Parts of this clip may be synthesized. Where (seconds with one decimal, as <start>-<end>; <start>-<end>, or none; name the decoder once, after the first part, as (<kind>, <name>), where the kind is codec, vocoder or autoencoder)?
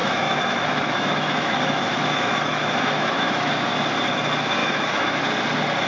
0.0-3.5 (autoencoder, DAC-VAE); 4.6-5.2